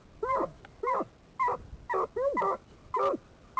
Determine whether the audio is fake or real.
real